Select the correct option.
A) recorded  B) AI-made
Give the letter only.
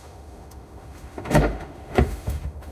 B